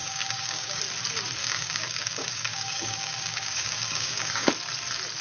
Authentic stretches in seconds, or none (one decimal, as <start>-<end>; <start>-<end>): 0.8-1.4; 4.5-5.2